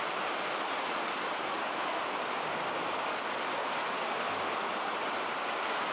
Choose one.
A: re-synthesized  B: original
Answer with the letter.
B